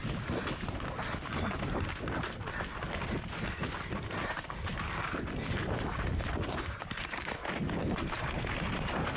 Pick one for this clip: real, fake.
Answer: real